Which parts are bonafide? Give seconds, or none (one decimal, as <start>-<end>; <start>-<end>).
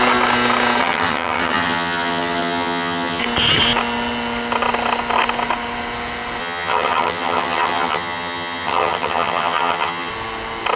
0.0-0.8; 3.2-6.4; 10.1-10.8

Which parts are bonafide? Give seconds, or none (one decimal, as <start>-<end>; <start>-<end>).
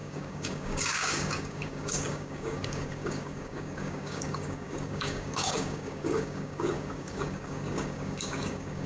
none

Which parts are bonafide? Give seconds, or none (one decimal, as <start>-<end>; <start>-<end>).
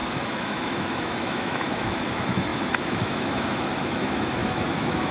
none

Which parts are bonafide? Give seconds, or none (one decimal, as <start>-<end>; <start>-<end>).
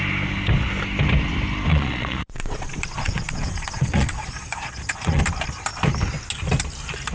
0.0-1.7; 5.2-7.1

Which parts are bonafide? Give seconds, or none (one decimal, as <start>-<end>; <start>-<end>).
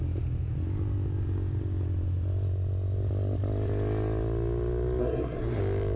0.0-5.0; 5.6-6.0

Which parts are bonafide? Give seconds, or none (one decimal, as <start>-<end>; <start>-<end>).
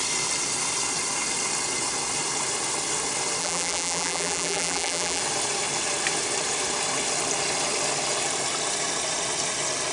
0.0-3.4; 5.2-9.9